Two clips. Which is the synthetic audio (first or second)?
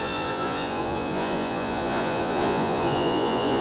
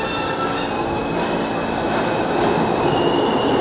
first